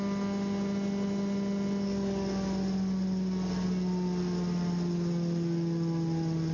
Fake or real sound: real